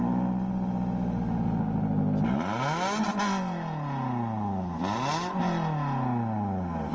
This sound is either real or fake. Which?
real